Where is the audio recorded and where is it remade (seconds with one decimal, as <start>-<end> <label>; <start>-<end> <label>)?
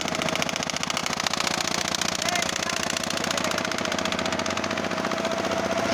0.0-5.9 recorded